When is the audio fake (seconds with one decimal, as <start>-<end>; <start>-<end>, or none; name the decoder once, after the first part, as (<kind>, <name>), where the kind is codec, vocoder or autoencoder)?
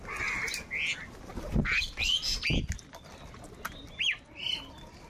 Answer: none